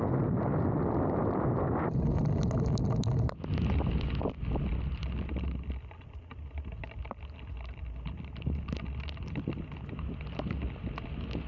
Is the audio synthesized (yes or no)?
no